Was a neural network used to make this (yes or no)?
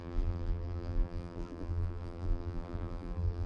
yes